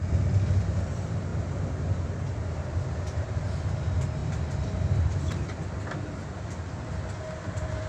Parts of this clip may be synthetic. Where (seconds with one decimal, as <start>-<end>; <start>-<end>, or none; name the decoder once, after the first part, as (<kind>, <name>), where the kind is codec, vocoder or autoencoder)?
none